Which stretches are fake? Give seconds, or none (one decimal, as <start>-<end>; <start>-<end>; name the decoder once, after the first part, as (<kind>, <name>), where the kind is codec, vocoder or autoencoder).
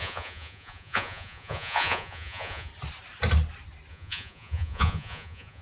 0.0-2.7 (vocoder, Vocos); 3.9-5.6